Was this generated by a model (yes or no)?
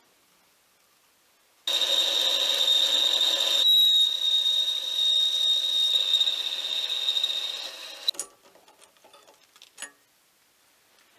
no